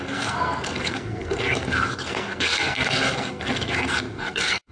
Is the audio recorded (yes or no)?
no